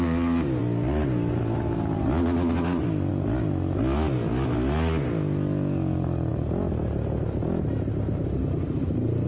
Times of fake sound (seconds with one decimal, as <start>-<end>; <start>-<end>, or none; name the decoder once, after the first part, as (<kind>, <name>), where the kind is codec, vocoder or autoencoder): none